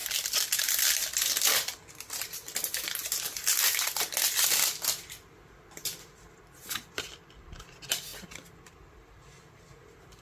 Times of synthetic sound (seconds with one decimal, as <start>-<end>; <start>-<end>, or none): 0.0-8.1; 8.9-10.2